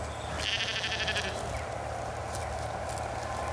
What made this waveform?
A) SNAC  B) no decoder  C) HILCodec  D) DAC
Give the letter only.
B